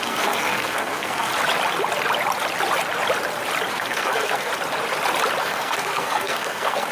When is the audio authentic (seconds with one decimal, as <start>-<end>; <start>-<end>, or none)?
1.3-3.7; 4.5-5.4